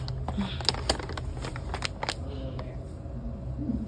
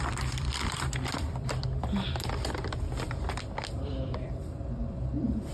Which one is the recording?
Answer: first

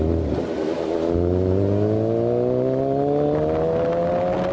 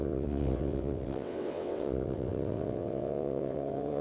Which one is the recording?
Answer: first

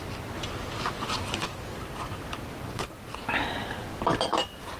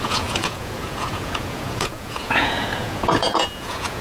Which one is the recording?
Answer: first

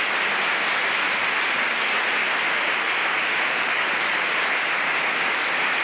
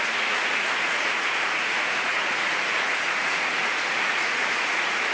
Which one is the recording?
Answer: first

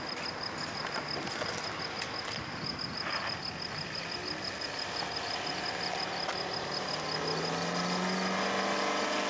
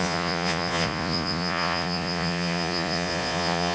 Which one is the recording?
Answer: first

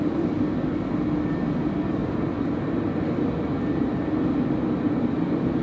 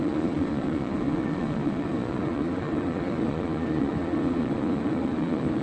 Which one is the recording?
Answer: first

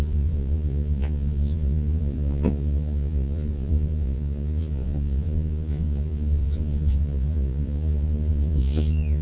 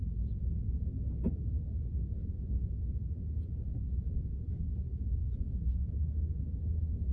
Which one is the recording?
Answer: second